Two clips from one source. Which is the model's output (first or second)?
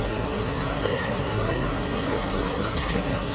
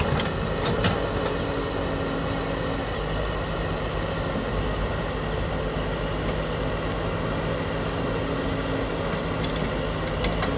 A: first